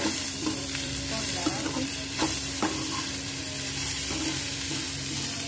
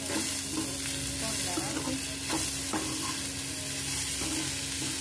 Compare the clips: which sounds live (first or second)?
second